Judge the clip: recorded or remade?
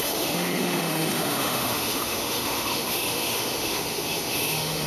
remade